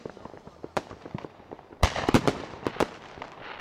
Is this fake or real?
fake